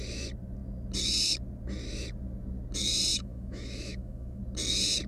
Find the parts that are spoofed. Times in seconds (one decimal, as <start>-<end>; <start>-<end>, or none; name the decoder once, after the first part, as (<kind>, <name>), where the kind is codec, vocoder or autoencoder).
3.1-4.4 (autoencoder, DAC-VAE)